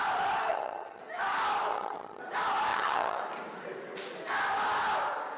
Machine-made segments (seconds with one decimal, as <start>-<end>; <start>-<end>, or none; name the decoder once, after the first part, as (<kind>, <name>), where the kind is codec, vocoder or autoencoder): 0.5-1.0 (vocoder, HiFi-GAN); 1.7-2.2; 2.7-3.2